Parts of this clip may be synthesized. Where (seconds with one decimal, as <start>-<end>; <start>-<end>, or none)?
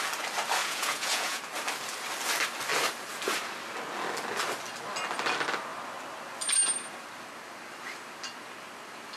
0.6-1.4